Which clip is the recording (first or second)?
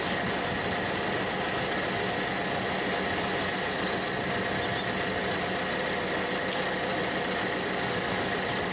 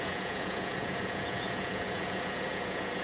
first